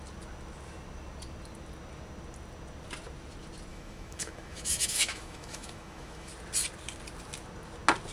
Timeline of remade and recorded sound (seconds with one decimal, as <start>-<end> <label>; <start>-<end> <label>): 0.0-3.7 recorded; 3.7-6.3 remade; 6.3-8.1 recorded